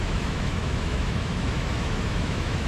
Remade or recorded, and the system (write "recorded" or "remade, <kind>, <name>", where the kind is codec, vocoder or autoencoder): remade, autoencoder, DAC-VAE